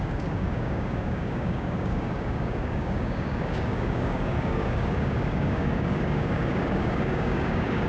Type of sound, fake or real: fake